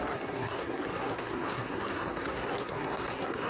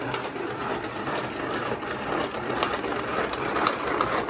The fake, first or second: first